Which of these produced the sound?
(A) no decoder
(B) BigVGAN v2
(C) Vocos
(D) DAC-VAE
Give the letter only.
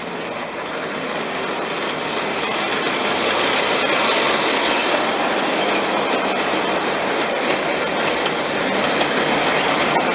A